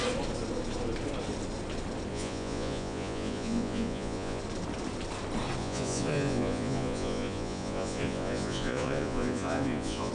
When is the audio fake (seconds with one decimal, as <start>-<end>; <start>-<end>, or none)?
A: 2.1-4.4; 5.6-10.1